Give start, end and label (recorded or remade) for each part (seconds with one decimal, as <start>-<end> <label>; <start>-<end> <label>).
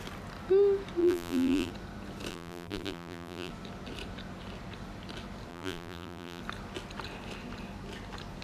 0.0-1.0 recorded; 1.0-1.7 remade; 1.7-2.3 recorded; 2.3-3.5 remade; 3.5-5.5 recorded; 5.5-6.4 remade; 6.4-8.4 recorded